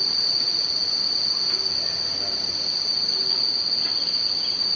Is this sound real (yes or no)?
yes